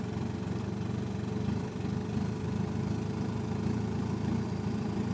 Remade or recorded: remade